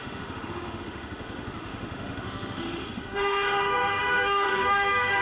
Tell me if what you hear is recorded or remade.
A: remade